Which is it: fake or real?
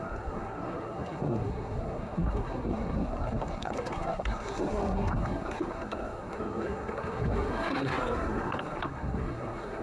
fake